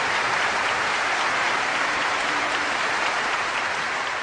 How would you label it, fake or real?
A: fake